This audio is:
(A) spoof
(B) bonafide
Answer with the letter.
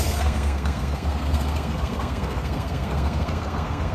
A